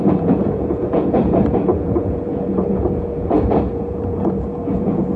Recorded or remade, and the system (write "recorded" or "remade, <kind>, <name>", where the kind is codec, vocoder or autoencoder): remade, vocoder, Vocos